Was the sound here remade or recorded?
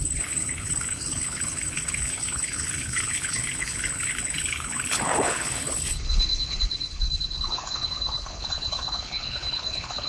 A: remade